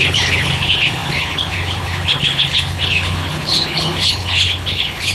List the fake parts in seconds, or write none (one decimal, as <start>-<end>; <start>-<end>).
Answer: 0.0-5.1